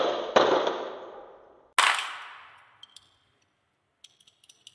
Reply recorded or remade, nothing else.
recorded